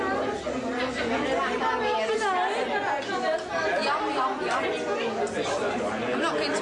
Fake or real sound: real